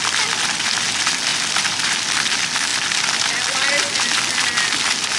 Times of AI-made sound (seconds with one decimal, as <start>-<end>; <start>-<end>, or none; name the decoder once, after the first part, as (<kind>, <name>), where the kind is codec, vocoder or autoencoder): none